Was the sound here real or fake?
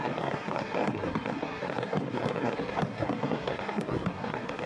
fake